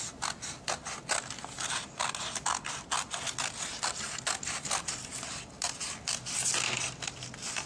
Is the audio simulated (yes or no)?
no